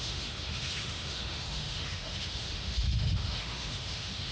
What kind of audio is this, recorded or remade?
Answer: remade